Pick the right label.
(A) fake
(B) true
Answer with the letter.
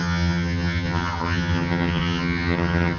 A